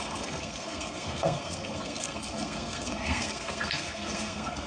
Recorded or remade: remade